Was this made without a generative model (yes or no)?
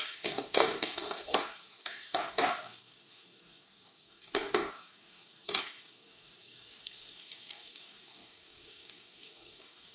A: no